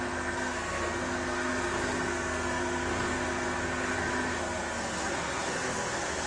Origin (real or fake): fake